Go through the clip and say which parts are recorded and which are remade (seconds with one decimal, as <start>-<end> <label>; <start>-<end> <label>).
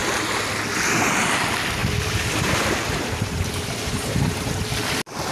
0.0-1.8 recorded; 1.8-4.6 remade; 4.6-5.3 recorded